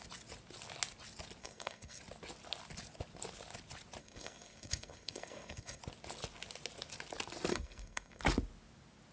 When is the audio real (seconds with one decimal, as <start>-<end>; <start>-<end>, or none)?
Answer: 0.0-1.4; 2.0-4.0; 5.8-7.5; 8.2-9.1